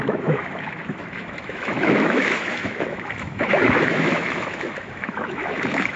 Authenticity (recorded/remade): remade